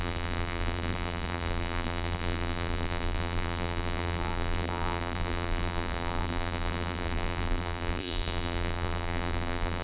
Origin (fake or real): fake